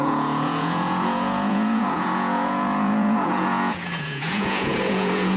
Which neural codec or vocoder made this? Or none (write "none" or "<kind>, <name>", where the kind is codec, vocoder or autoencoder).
vocoder, Vocos